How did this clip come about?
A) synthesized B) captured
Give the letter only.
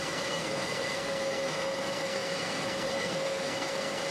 A